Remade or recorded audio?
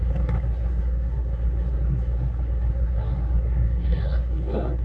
remade